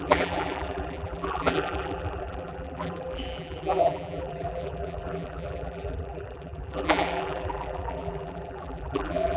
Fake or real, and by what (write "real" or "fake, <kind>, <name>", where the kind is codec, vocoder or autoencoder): fake, vocoder, BigVGAN v2